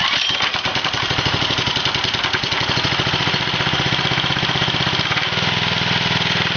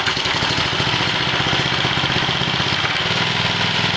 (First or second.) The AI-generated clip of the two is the first